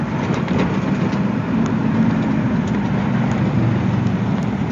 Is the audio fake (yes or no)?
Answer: no